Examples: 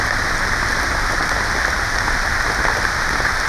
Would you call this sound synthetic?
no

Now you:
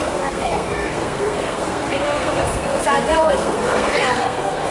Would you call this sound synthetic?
yes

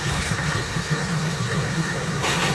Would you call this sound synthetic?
yes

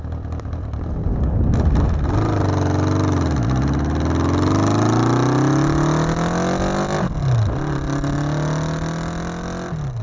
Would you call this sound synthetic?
no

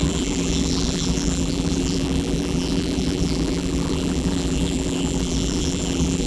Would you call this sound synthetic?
yes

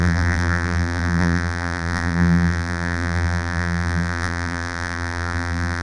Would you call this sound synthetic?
yes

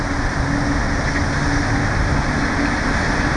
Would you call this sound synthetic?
no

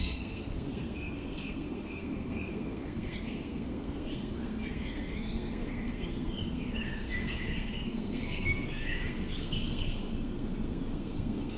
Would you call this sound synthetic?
yes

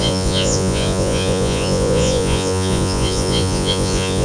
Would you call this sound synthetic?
yes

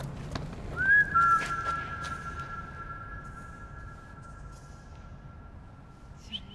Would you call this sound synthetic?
no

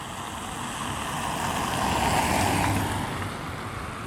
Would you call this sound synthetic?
no